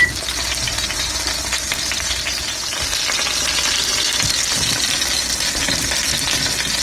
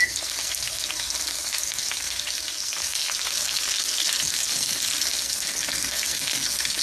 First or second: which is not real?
second